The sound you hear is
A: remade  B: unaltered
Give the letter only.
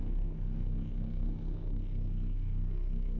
A